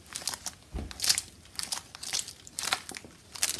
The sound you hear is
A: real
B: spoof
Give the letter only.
A